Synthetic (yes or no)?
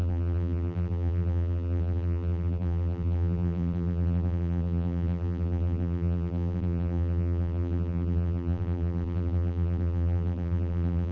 yes